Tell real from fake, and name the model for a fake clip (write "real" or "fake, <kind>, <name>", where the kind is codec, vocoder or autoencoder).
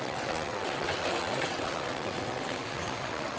fake, vocoder, WaveNeXt